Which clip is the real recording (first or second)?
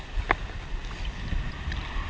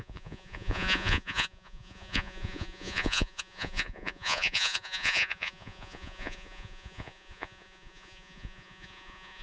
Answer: first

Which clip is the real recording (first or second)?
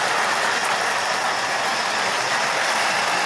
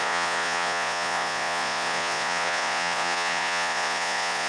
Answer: first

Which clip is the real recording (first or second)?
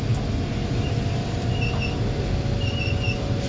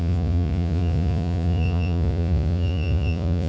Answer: first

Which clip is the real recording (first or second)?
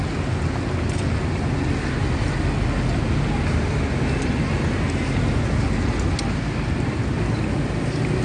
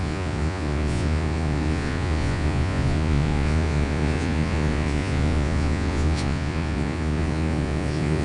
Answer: first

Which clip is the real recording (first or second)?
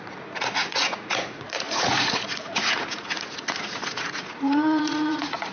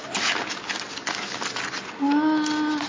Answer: second